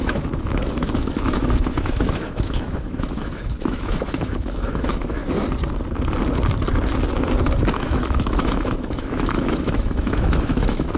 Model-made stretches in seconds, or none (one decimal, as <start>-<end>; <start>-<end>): 0.0-5.2; 7.7-11.0